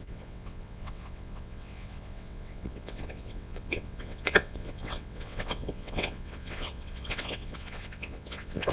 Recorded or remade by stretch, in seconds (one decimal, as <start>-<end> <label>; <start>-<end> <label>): 0.0-8.7 remade